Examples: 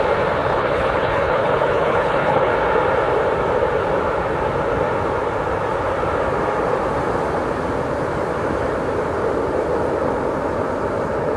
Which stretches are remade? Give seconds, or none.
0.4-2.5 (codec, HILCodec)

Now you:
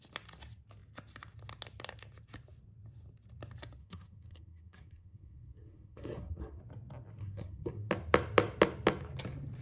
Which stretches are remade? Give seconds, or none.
3.8-6.6 (codec, SNAC); 7.2-7.9

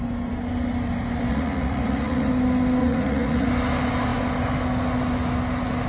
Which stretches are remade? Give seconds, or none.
1.3-2.3 (vocoder, Vocos); 2.8-3.5

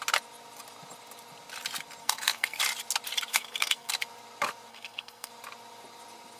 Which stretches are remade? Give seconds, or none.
2.0-2.6 (codec, SNAC); 3.3-3.9; 4.7-5.3